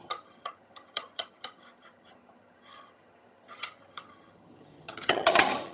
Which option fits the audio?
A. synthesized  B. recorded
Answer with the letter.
A